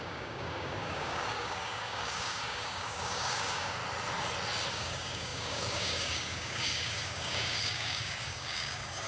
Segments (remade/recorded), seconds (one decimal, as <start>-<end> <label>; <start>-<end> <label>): 0.0-3.8 remade; 3.8-4.7 recorded; 4.7-9.1 remade